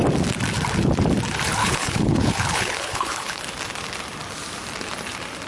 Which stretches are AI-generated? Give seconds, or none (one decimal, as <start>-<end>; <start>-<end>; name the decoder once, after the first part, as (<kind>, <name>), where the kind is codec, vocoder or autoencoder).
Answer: 1.6-3.4 (codec, HILCodec)